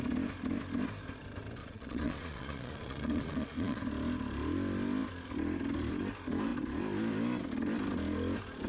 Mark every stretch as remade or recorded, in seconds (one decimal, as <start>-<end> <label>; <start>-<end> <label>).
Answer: 0.0-1.6 recorded; 1.6-3.8 remade; 3.8-8.7 recorded